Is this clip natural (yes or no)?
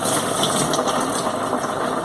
yes